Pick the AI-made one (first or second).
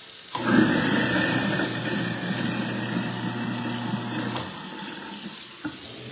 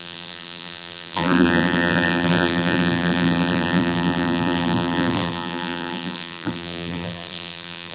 second